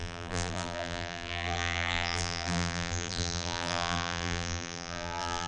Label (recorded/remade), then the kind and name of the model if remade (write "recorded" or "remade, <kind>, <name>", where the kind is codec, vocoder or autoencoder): remade, vocoder, BigVGAN v2